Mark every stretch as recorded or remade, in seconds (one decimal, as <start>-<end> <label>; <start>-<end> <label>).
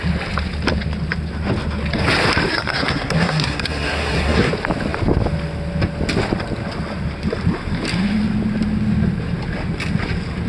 0.0-2.5 recorded; 2.5-4.5 remade; 4.5-10.5 recorded